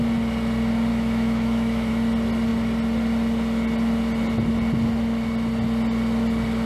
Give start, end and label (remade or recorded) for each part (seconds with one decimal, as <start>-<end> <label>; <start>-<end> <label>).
0.0-0.9 recorded; 0.9-1.9 remade; 1.9-6.7 recorded